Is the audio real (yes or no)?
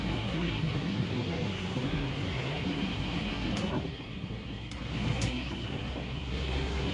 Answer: no